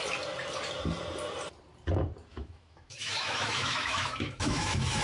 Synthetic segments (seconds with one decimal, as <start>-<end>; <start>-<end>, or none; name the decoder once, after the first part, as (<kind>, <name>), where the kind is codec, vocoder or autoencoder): 2.3-5.0 (autoencoder, DAC-VAE)